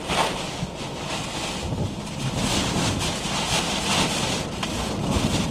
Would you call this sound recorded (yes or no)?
yes